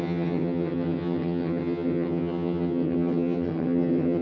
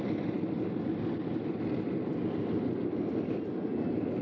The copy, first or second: first